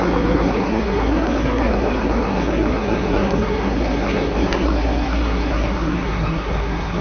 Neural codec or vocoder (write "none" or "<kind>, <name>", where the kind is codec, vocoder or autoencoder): codec, SNAC